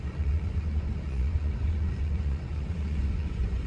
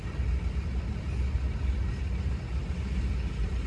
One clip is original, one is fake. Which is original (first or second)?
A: second